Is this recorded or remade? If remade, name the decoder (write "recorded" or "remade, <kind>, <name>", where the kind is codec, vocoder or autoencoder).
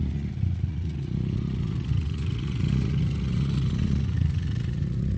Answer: remade, vocoder, Vocos